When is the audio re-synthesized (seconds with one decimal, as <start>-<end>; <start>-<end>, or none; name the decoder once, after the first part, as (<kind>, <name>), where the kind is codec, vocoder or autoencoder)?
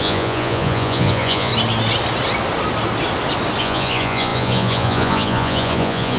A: 0.0-1.5 (vocoder, Vocos); 3.6-6.2